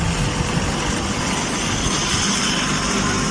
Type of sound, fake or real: real